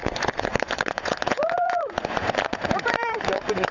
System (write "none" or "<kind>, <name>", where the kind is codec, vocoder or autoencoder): vocoder, Vocos